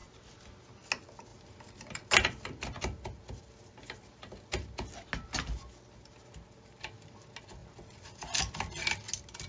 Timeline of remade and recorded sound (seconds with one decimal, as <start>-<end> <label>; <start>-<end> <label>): 0.0-0.9 remade; 0.9-9.5 recorded